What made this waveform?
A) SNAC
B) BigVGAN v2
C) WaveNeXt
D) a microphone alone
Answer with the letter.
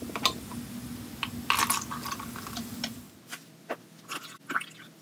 D